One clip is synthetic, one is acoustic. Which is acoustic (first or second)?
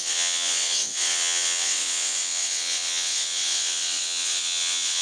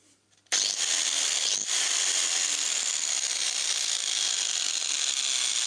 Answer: second